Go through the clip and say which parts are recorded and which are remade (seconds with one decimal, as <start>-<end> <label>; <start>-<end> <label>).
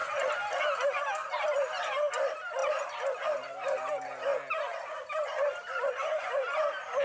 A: 0.0-2.6 recorded; 2.6-3.9 remade; 3.9-4.3 recorded; 4.3-6.3 remade; 6.3-7.0 recorded